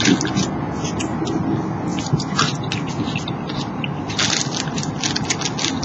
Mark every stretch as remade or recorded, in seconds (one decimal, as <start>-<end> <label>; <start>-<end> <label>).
0.0-5.8 recorded